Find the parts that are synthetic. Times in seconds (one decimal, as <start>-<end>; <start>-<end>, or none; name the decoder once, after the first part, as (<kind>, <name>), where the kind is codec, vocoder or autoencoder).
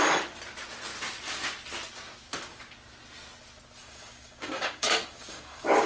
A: 3.8-5.9 (codec, DAC)